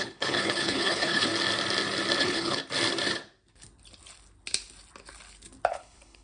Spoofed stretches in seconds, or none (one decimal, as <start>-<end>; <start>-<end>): 0.0-1.3; 2.2-2.6; 5.7-6.2

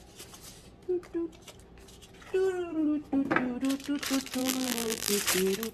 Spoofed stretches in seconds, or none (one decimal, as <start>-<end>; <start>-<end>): 4.4-5.1